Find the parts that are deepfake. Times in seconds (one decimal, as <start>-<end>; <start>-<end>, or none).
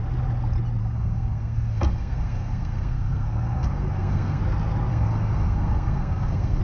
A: 0.8-4.4; 4.9-6.6